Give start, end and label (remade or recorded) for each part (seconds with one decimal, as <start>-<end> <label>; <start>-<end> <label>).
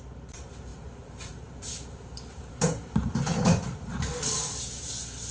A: 0.0-0.7 recorded; 0.7-3.9 remade; 3.9-5.3 recorded